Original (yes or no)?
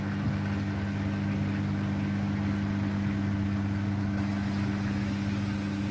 yes